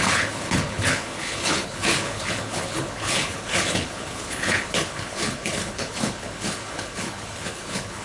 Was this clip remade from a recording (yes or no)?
yes